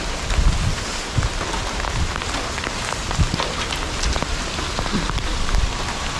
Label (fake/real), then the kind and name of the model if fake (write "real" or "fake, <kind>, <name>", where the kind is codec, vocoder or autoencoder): fake, vocoder, BigVGAN v2